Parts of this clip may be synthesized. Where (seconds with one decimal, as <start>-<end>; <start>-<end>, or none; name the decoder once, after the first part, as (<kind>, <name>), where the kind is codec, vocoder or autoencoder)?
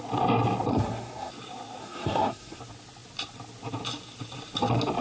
0.7-1.3 (codec, SNAC); 1.8-2.6